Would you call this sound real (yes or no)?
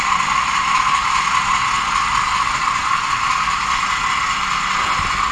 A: yes